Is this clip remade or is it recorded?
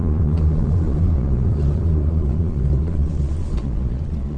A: remade